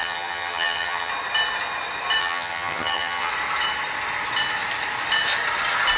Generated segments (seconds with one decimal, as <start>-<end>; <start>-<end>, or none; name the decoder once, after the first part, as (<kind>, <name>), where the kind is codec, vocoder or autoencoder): 0.0-1.1 (vocoder, HiFi-GAN); 2.2-3.3